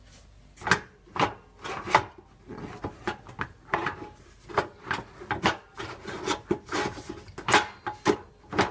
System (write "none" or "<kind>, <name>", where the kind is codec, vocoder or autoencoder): none